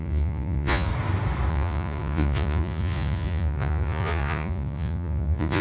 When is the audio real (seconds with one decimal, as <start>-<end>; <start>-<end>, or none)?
0.9-1.5